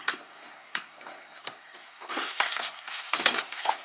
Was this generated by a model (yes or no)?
yes